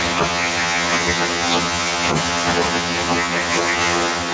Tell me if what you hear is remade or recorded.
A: remade